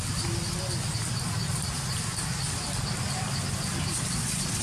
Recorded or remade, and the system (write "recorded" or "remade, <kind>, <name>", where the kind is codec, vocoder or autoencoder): recorded